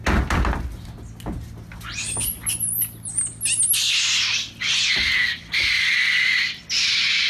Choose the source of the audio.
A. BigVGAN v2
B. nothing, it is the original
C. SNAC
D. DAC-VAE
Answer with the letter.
B